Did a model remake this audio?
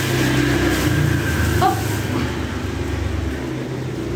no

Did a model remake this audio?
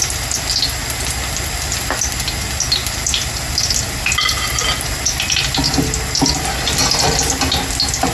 no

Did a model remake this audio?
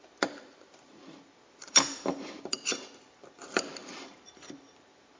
yes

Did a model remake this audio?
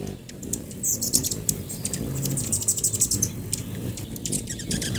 yes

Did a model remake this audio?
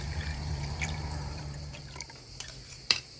yes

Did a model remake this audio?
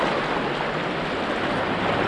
no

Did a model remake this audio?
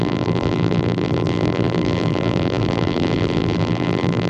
yes